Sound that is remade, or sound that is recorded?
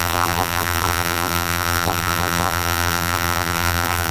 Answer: remade